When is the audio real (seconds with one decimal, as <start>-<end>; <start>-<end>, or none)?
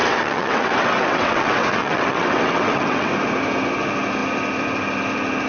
3.1-5.5